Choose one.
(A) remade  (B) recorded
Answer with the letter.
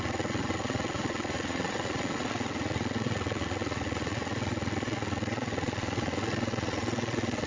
A